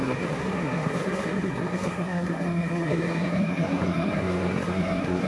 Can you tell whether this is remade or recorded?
remade